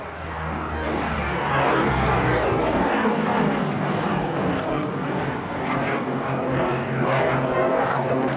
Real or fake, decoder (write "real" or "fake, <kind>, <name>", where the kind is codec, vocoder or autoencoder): fake, codec, DAC